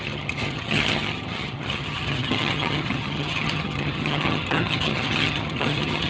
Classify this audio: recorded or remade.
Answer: remade